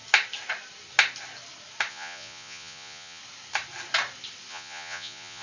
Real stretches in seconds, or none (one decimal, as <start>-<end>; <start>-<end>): 0.0-1.9; 3.2-4.5